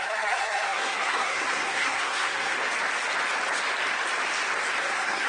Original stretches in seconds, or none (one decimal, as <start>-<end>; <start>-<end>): 2.6-4.8

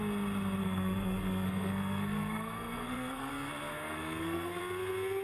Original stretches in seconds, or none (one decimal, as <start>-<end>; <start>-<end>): 0.0-0.6; 3.3-3.7; 4.6-5.2